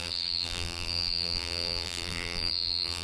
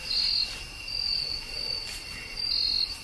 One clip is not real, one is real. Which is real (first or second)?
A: second